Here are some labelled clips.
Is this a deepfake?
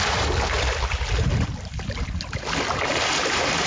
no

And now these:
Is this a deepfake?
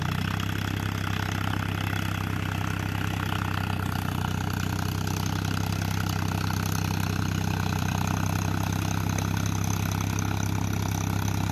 no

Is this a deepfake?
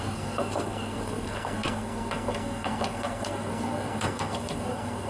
yes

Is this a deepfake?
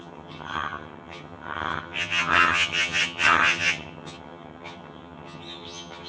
yes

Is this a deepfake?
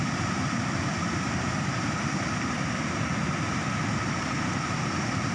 yes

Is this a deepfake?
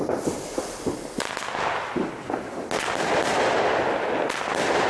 no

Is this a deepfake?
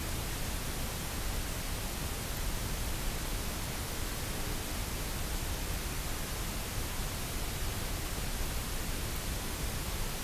no